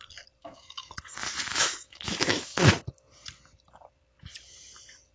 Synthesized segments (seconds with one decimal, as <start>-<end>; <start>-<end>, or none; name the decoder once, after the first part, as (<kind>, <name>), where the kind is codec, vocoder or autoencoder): 0.4-0.9 (autoencoder, DAC-VAE); 1.5-2.7